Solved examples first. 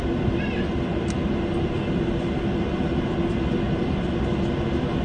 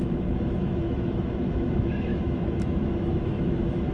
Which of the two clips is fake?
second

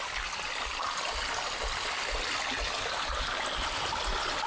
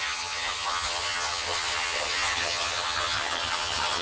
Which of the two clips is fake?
second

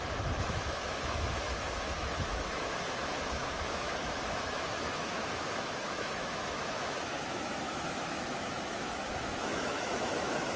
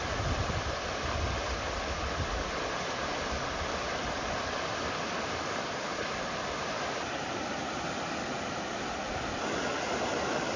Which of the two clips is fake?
first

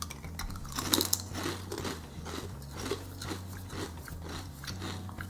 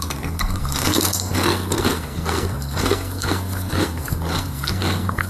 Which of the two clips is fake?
second